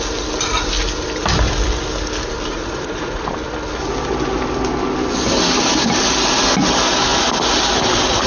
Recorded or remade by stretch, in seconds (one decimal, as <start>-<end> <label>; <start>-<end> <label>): 0.0-2.5 recorded; 2.5-3.2 remade; 3.2-8.3 recorded